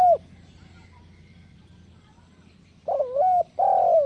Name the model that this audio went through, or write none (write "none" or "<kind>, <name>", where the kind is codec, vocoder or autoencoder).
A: none